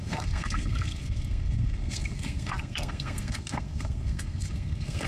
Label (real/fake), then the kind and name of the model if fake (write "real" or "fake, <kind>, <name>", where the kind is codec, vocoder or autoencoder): fake, codec, SNAC